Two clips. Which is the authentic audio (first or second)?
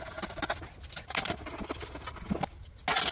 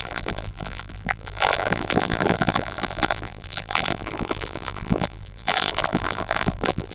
first